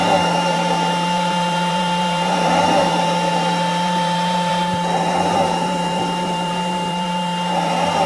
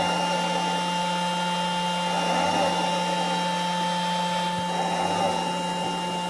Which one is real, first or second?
second